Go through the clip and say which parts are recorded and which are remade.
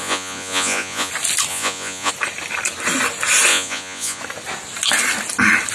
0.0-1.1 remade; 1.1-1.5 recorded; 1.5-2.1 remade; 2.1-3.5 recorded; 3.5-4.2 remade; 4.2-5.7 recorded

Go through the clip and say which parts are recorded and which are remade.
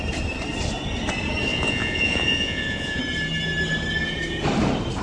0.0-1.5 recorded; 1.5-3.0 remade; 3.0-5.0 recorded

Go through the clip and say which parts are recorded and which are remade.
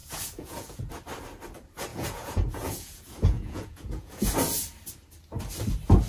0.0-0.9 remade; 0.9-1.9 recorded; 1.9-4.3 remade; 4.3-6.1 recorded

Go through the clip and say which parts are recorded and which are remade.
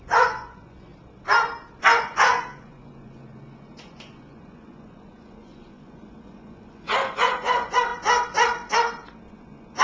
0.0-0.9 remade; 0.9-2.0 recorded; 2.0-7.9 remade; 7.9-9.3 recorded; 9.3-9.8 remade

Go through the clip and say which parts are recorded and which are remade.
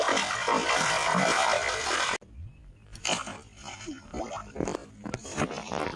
0.0-6.0 recorded